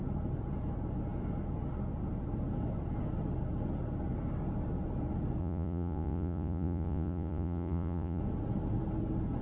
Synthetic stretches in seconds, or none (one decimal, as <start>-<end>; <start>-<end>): 5.4-8.2